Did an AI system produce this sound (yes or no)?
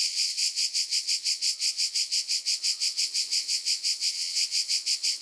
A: yes